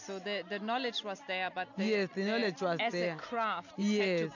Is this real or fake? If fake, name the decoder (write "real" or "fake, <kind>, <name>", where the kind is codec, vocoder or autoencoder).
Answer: real